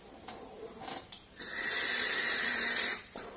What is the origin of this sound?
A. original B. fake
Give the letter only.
B